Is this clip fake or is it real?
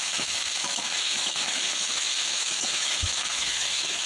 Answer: fake